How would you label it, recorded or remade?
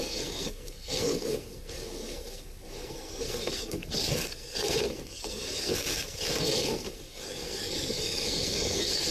remade